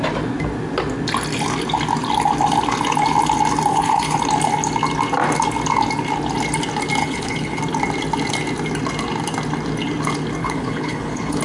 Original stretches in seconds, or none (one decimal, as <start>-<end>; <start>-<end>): 0.0-3.7; 4.2-7.0; 7.6-10.4